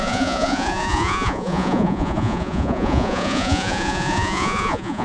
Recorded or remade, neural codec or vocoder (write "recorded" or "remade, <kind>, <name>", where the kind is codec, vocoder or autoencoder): remade, vocoder, Vocos